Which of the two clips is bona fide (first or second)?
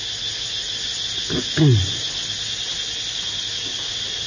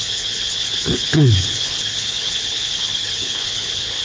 first